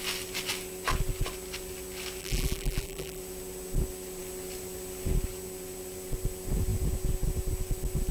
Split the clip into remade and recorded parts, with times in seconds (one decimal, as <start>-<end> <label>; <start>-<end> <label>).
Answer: 0.0-2.2 recorded; 2.2-3.2 remade; 3.2-8.1 recorded